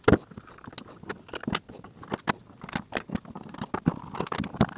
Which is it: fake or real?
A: real